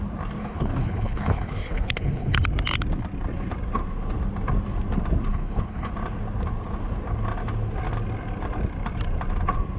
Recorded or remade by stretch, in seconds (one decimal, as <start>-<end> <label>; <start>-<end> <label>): 0.0-0.4 recorded; 0.4-2.4 remade; 2.4-5.3 recorded; 5.3-5.9 remade; 5.9-9.8 recorded